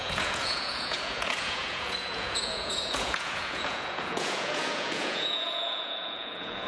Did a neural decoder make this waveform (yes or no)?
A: yes